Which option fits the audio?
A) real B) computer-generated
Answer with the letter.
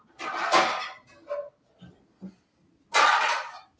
A